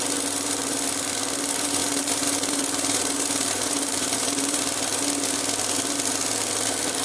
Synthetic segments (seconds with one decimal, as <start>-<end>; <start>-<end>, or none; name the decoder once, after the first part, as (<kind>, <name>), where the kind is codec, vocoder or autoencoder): 1.8-4.6 (vocoder, BigVGAN v2)